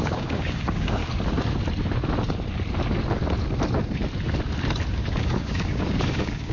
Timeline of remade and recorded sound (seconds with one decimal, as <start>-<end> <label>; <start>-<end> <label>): 0.0-1.0 remade; 1.0-4.9 recorded; 4.9-6.5 remade